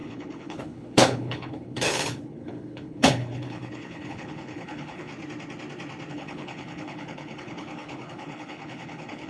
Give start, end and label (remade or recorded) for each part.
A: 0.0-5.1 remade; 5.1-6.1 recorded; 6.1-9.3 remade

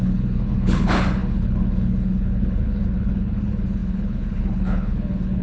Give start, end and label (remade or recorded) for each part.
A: 0.0-5.4 remade

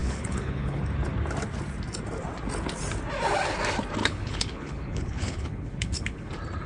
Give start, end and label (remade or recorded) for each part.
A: 0.0-0.8 remade; 0.8-4.0 recorded; 4.0-6.3 remade; 6.3-6.7 recorded

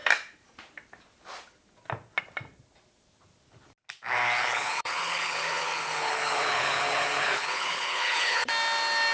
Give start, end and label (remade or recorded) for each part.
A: 0.0-4.4 recorded; 4.4-8.5 remade; 8.5-9.1 recorded

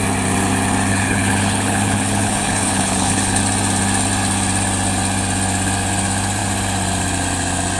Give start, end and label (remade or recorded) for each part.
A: 0.0-0.9 recorded; 0.9-3.4 remade; 3.4-7.8 recorded

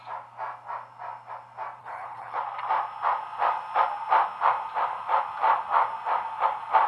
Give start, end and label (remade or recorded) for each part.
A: 0.0-1.8 recorded; 1.8-2.4 remade; 2.4-6.9 recorded

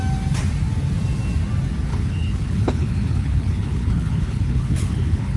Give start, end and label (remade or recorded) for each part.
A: 0.0-1.9 recorded; 1.9-5.4 remade